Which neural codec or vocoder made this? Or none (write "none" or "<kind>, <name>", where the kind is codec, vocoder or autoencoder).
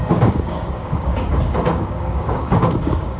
codec, DAC